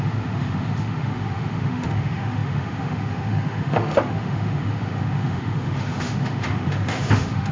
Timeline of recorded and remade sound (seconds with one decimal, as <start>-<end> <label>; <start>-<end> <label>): 0.0-7.5 remade